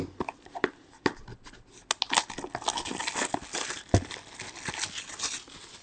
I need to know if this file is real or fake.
real